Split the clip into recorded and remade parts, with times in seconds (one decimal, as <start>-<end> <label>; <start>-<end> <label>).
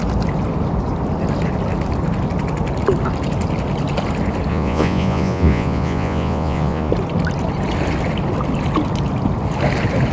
0.0-4.5 recorded; 4.5-6.9 remade; 6.9-10.1 recorded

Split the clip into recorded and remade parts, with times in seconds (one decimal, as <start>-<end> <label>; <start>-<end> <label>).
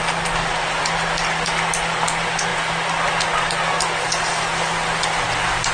0.0-5.7 recorded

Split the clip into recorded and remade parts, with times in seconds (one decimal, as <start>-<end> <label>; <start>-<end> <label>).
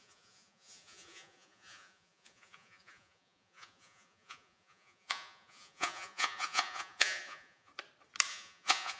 0.0-7.7 remade; 7.7-8.3 recorded; 8.3-9.0 remade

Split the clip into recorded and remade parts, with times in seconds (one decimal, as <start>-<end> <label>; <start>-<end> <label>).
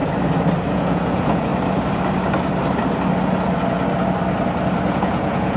0.0-0.7 recorded; 0.7-1.5 remade; 1.5-4.9 recorded; 4.9-5.6 remade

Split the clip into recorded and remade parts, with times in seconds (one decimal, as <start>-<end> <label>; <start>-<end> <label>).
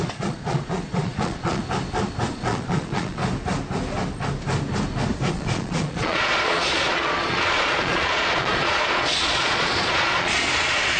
0.0-1.6 remade; 1.6-2.3 recorded; 2.3-3.2 remade; 3.2-5.3 recorded; 5.3-11.0 remade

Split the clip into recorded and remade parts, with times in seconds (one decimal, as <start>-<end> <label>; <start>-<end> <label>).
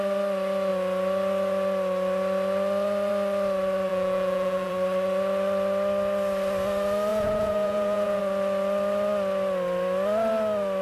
0.0-3.9 recorded; 3.9-4.7 remade; 4.7-7.1 recorded; 7.1-8.2 remade; 8.2-10.8 recorded